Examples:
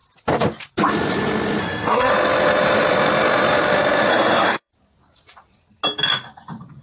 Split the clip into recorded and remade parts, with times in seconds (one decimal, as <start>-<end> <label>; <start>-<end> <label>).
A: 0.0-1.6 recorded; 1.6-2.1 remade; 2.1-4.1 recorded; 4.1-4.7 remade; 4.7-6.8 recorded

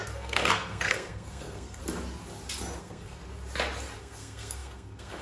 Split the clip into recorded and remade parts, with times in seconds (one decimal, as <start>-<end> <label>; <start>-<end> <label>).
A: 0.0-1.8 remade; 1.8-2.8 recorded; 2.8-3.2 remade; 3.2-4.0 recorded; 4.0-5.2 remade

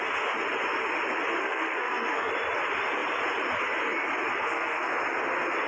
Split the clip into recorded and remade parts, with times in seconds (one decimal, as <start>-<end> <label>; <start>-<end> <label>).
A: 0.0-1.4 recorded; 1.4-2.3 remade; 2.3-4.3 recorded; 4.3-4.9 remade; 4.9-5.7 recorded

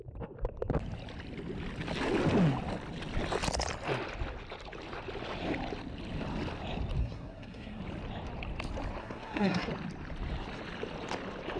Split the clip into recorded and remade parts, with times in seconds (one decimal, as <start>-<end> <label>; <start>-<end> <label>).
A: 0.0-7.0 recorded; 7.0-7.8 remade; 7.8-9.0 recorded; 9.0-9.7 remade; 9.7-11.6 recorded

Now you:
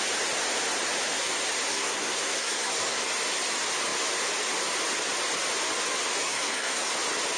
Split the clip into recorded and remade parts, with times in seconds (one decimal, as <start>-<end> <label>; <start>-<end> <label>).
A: 0.0-1.7 recorded; 1.7-3.1 remade; 3.1-6.2 recorded; 6.2-6.9 remade; 6.9-7.4 recorded

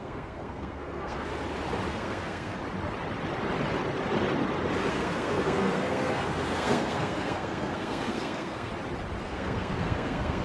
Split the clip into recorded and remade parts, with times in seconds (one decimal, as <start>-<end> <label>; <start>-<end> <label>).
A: 0.0-1.3 remade; 1.3-1.9 recorded; 1.9-2.6 remade; 2.6-4.9 recorded; 4.9-8.7 remade; 8.7-9.2 recorded; 9.2-10.4 remade

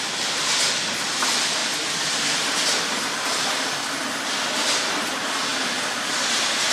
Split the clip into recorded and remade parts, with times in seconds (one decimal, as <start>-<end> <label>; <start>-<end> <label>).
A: 0.0-6.7 recorded